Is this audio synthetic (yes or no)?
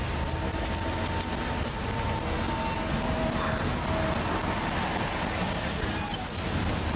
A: no